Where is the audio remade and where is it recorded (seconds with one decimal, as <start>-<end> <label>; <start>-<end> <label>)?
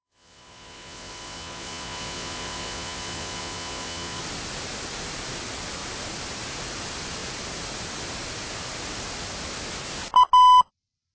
0.0-4.2 remade; 4.2-11.1 recorded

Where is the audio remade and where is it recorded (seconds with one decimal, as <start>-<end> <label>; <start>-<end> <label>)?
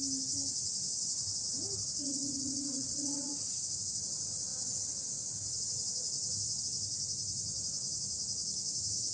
0.0-2.0 recorded; 2.0-3.3 remade; 3.3-9.1 recorded